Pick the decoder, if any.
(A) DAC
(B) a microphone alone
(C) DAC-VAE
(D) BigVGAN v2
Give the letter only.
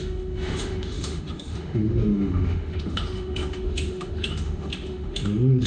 C